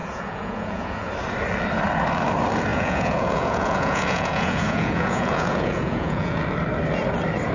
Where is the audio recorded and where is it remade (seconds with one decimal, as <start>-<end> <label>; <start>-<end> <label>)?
0.0-1.1 remade; 1.1-2.7 recorded; 2.7-6.4 remade; 6.4-7.5 recorded

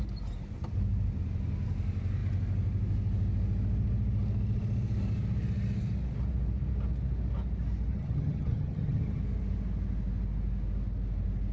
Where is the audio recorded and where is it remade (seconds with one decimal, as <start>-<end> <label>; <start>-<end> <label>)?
0.0-7.9 recorded; 7.9-9.2 remade; 9.2-11.5 recorded